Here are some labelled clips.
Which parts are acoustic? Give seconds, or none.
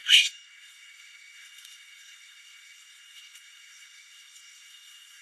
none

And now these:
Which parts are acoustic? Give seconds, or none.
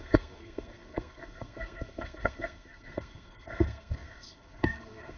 none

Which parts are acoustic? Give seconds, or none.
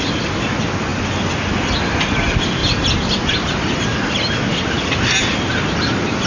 0.0-6.3